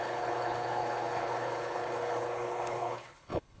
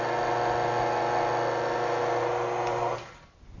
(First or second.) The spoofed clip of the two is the first